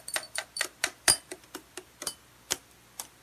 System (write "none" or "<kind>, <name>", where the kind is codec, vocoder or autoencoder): vocoder, BigVGAN v2